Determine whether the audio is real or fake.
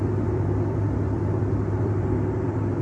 fake